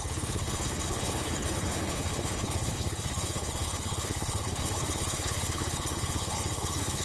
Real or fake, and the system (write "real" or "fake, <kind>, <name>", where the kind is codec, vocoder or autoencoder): fake, codec, HILCodec